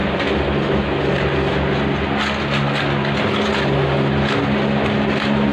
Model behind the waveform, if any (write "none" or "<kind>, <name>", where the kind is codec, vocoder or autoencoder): none